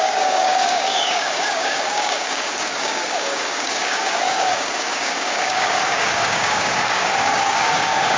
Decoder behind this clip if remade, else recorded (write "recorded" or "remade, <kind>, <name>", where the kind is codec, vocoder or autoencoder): remade, codec, DAC